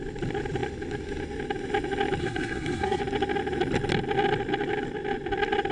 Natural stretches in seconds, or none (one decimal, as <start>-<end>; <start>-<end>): 0.0-2.2; 3.0-5.7